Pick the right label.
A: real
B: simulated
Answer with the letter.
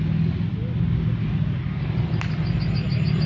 A